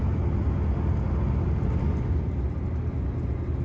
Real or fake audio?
real